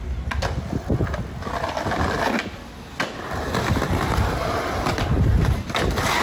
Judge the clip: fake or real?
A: real